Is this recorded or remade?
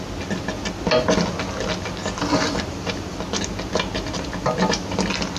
recorded